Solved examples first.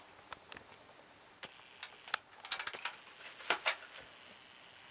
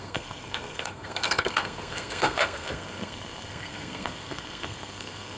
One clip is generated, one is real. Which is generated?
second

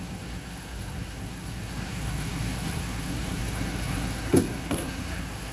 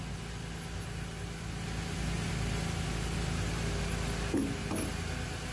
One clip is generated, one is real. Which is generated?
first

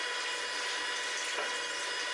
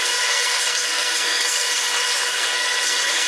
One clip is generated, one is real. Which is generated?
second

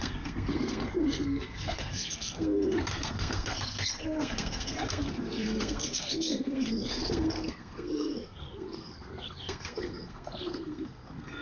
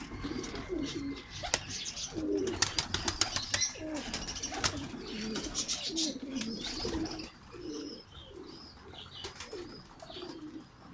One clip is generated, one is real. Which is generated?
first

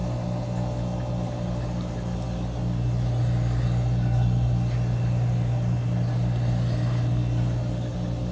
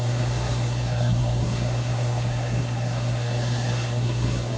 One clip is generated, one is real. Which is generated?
second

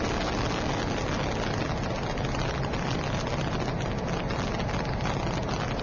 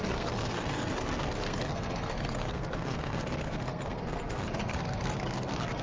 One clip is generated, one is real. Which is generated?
second